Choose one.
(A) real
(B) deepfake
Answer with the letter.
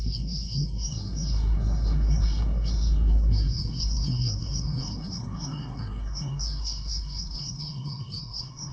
B